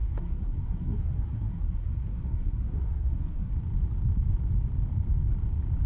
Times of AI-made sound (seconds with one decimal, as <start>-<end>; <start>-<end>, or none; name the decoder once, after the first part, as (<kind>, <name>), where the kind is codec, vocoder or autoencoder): 0.0-3.5 (codec, SNAC)